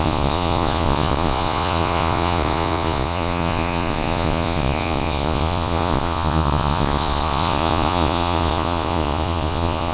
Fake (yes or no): yes